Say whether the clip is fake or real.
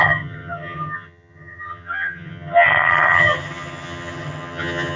fake